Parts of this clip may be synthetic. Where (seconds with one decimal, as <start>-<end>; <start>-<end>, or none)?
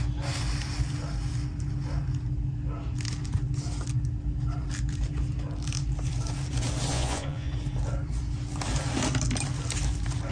6.9-7.5